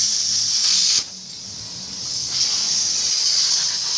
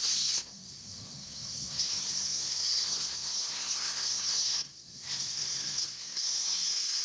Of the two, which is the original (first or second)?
first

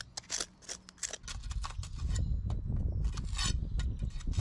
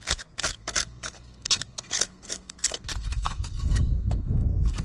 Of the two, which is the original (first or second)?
first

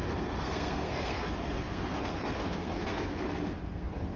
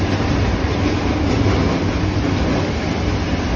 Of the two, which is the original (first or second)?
second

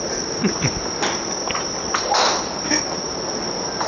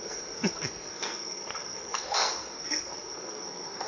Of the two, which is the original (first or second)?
first